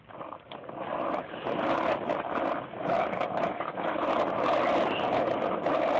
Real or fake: real